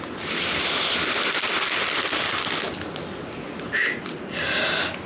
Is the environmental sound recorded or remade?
recorded